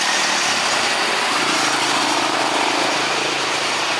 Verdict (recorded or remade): remade